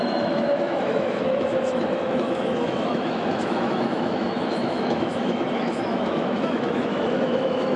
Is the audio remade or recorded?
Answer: remade